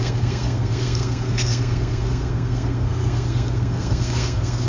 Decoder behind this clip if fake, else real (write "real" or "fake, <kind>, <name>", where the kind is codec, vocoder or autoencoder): fake, codec, SNAC